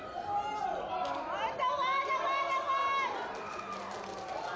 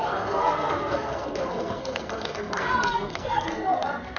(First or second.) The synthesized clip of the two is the second